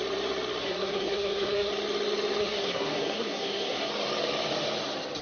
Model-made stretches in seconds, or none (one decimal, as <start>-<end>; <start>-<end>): 0.6-1.7; 2.4-3.9